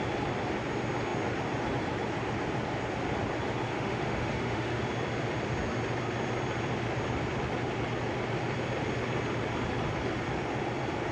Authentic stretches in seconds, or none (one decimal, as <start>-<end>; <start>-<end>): 0.0-3.7; 4.8-11.1